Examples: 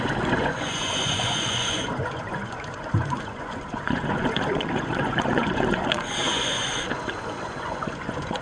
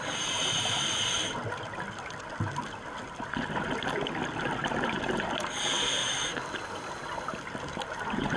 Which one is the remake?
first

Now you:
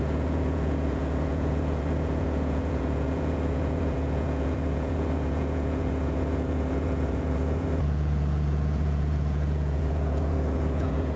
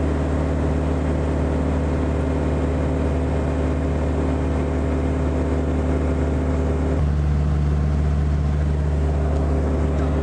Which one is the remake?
first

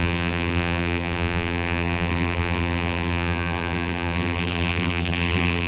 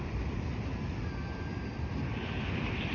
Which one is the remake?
first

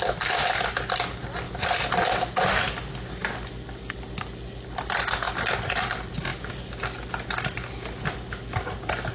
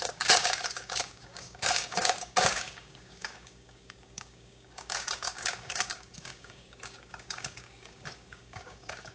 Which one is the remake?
second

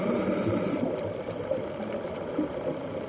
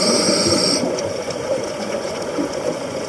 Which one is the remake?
second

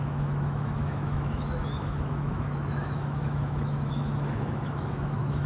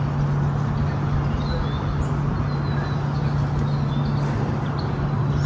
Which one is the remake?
first